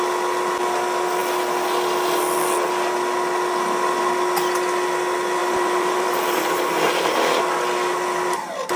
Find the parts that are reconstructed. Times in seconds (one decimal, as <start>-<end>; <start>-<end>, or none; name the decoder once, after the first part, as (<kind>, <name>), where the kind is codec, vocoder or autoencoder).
5.4-7.4 (vocoder, BigVGAN v2)